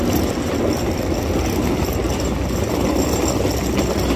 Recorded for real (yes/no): yes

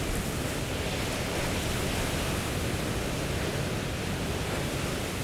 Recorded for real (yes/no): yes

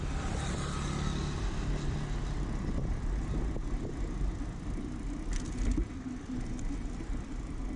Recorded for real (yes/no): yes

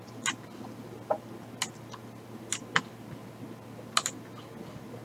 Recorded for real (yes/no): yes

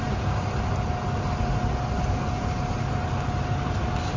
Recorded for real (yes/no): yes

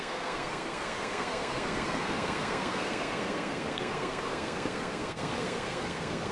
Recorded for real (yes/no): no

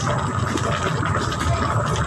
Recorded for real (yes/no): yes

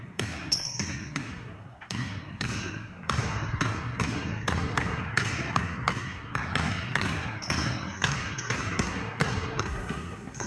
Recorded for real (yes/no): no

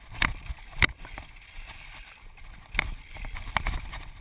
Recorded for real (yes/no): yes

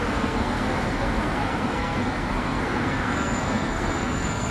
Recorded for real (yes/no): no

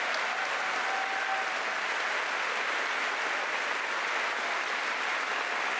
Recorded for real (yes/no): yes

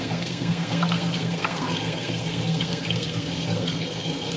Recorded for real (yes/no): no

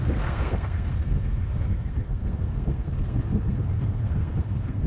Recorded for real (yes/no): no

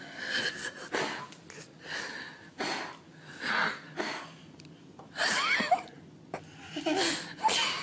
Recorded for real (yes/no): yes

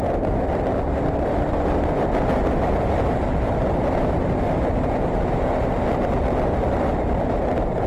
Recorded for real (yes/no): yes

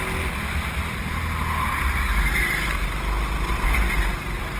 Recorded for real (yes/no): yes